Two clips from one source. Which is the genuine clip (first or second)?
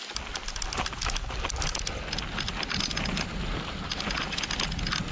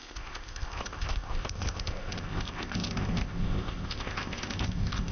first